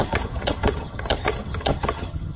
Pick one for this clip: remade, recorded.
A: remade